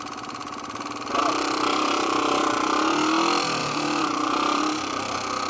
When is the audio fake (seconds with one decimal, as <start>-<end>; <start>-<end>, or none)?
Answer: 1.7-2.4; 3.6-4.6